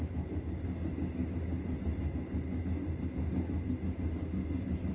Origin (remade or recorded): recorded